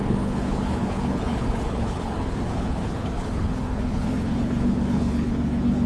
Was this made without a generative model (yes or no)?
no